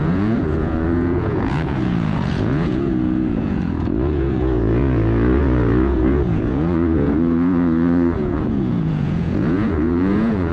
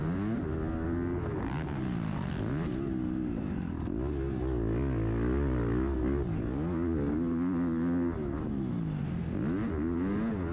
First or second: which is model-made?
first